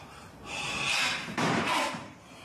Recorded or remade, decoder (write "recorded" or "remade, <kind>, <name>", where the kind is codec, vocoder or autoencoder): remade, vocoder, BigVGAN v2